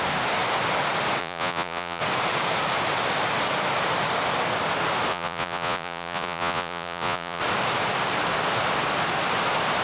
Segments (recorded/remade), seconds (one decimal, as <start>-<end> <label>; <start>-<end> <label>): 0.0-1.2 recorded; 1.2-2.0 remade; 2.0-5.1 recorded; 5.1-7.4 remade; 7.4-9.8 recorded